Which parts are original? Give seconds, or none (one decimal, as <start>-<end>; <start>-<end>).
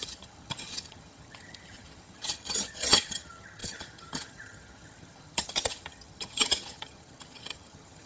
none